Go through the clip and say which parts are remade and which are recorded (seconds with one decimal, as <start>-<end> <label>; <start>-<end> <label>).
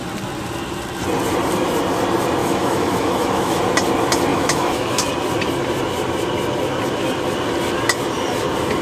0.0-2.4 recorded; 2.4-3.6 remade; 3.6-4.3 recorded; 4.3-5.1 remade; 5.1-8.8 recorded